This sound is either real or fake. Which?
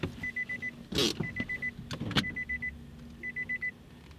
real